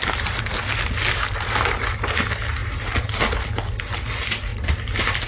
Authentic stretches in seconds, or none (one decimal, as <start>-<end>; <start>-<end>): 0.0-5.3